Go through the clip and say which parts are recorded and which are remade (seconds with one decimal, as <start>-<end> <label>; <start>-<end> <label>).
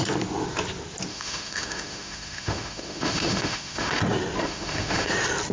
0.0-1.1 recorded; 1.1-4.0 remade; 4.0-4.4 recorded; 4.4-5.1 remade; 5.1-5.5 recorded